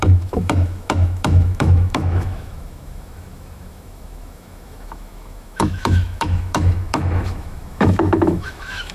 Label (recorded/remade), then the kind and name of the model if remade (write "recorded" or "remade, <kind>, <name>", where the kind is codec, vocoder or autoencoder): remade, autoencoder, DAC-VAE